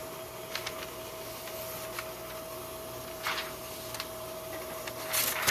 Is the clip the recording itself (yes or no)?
yes